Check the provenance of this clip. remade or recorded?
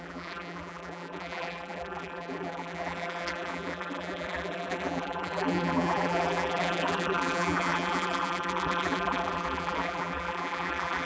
remade